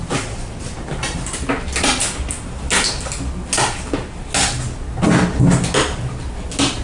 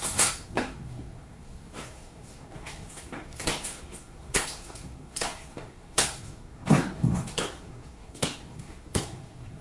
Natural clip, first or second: first